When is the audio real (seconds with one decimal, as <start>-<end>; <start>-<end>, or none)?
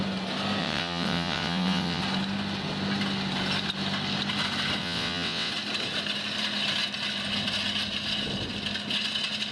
0.0-0.6; 2.0-4.8; 5.5-9.5